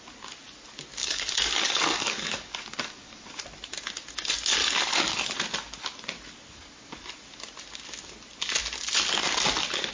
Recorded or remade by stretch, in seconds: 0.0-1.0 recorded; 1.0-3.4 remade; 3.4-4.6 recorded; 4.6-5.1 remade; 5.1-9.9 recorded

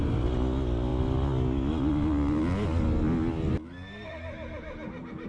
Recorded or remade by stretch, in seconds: 0.0-5.3 recorded